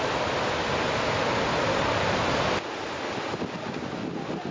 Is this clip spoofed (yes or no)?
no